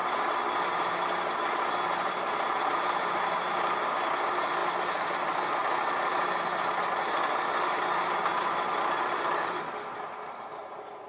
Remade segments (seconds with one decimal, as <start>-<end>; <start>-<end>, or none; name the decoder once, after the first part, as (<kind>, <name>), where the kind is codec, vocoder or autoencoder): 0.0-2.7 (vocoder, BigVGAN v2); 4.6-5.5